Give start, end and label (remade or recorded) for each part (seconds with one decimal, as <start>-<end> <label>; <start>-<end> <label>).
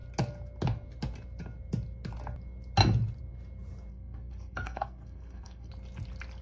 0.0-3.9 recorded; 3.9-5.7 remade; 5.7-6.4 recorded